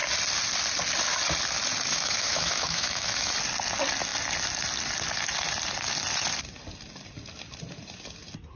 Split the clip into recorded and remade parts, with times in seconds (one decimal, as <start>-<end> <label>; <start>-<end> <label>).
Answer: 0.0-1.9 recorded; 1.9-3.3 remade; 3.3-8.6 recorded